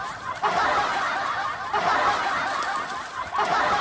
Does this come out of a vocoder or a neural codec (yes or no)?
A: no